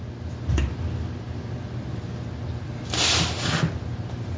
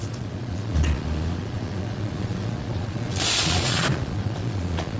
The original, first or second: first